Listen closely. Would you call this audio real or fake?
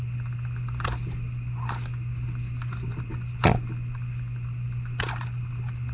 real